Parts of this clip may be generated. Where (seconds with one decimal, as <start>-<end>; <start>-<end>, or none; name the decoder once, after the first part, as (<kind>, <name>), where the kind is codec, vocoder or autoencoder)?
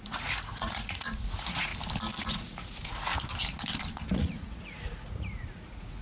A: 0.0-1.7 (vocoder, Vocos); 2.2-3.1; 4.2-6.0